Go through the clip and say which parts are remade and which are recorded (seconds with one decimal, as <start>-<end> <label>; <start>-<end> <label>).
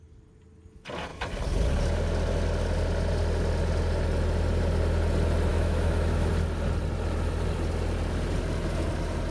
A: 0.0-5.5 recorded; 5.5-6.3 remade; 6.3-9.3 recorded